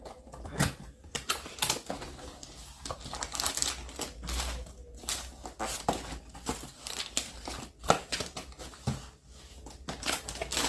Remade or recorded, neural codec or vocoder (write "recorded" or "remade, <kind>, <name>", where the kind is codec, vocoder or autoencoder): recorded